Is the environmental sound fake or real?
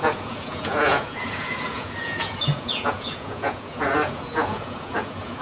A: fake